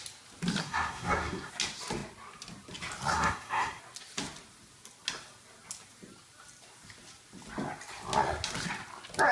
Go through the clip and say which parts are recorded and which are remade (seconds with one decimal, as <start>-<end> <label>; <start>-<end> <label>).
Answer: 0.0-0.6 recorded; 0.6-1.5 remade; 1.5-3.1 recorded; 3.1-3.8 remade; 3.8-9.3 recorded